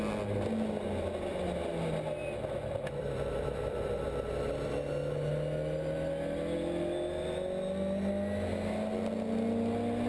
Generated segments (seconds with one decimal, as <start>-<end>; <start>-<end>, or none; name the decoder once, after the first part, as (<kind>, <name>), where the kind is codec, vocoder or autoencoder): 2.2-4.7 (vocoder, BigVGAN v2)